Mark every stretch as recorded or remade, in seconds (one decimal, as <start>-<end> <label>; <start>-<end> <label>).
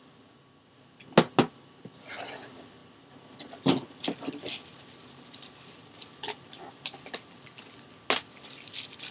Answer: 0.0-4.7 recorded; 4.7-7.5 remade; 7.5-9.1 recorded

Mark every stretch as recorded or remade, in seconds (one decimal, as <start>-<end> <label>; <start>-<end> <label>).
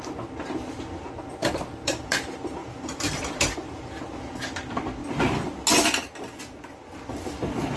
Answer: 0.0-1.4 recorded; 1.4-3.9 remade; 3.9-7.8 recorded